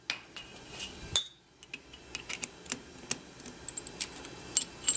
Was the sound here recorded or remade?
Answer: recorded